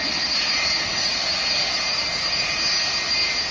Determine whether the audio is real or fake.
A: real